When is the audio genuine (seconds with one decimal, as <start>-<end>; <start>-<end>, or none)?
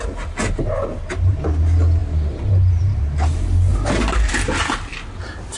0.0-5.6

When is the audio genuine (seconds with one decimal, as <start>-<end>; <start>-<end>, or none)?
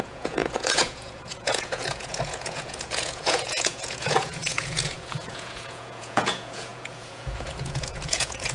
none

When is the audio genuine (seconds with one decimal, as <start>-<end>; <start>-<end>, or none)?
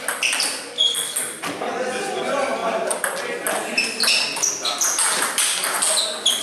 0.0-6.4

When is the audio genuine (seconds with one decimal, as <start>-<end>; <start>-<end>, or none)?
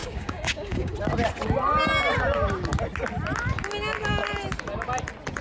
0.9-5.4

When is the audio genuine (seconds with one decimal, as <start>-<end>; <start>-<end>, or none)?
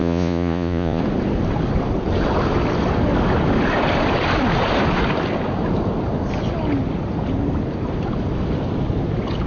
1.0-9.5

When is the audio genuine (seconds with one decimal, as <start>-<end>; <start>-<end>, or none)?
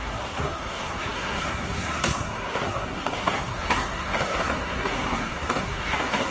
none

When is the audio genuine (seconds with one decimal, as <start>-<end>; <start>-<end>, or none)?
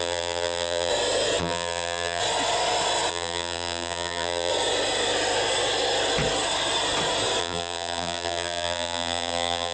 0.9-1.4; 2.2-3.1; 4.5-7.4